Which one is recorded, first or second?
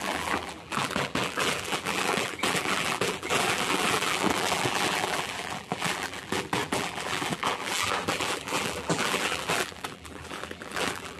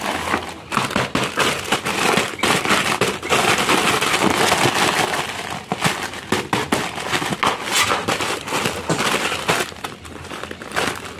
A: second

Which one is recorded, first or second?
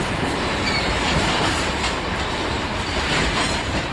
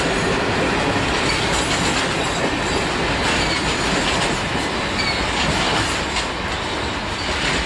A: second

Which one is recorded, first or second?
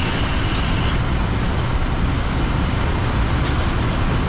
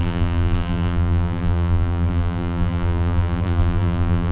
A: first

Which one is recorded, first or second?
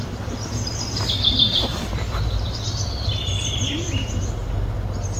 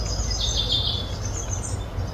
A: second